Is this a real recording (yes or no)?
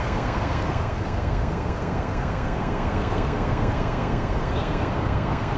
no